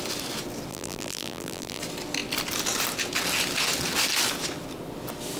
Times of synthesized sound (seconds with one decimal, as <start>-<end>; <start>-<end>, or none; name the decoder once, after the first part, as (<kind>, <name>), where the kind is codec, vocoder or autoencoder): 0.7-1.8 (vocoder, BigVGAN v2)